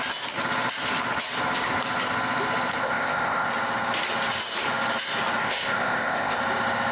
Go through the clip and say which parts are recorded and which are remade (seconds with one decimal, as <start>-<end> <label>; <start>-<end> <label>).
0.0-2.8 recorded; 2.8-3.5 remade; 3.5-5.4 recorded; 5.4-6.4 remade; 6.4-6.9 recorded